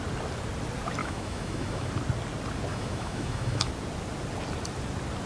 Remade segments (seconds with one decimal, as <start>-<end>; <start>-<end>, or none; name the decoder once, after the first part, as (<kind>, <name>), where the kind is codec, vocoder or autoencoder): 1.0-1.9 (autoencoder, DAC-VAE); 2.7-3.7